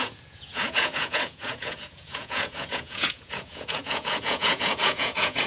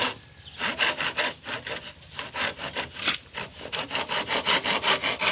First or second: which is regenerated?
first